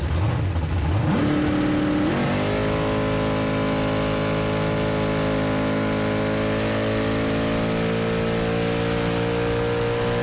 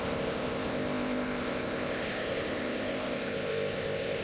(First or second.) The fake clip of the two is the second